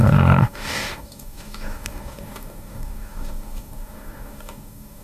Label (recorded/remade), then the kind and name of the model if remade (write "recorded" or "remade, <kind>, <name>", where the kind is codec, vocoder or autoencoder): remade, codec, DAC